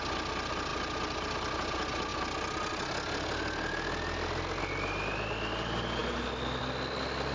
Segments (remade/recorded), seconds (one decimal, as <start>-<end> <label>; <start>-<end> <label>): 0.0-7.3 recorded